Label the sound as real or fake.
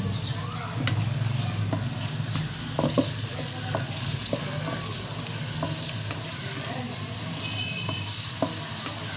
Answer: real